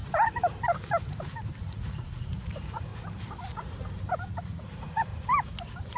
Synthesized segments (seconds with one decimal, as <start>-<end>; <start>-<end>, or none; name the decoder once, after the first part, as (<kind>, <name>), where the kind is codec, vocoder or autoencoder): 1.6-2.9 (vocoder, Vocos); 4.4-5.1